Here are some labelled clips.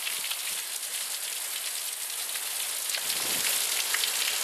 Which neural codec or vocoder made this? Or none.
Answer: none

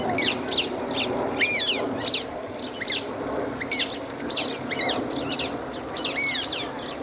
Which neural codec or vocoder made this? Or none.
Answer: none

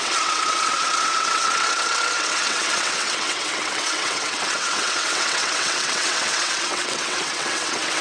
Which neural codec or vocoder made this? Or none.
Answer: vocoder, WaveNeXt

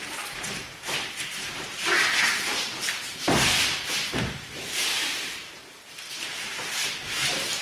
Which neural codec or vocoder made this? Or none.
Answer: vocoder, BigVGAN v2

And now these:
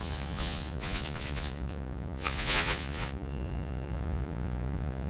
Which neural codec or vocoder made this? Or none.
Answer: vocoder, Vocos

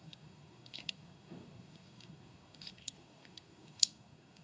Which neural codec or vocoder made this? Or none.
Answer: codec, SNAC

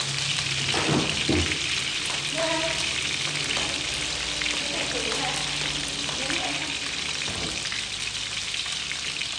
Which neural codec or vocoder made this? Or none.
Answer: none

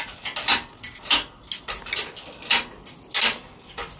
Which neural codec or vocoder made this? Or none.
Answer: none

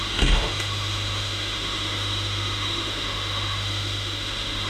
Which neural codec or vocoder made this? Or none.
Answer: autoencoder, DAC-VAE